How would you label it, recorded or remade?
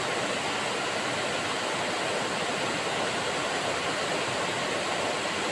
recorded